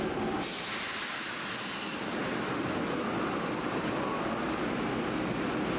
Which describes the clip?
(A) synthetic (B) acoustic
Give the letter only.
B